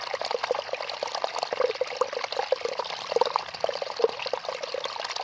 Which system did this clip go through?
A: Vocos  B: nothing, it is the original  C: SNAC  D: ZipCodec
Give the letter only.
B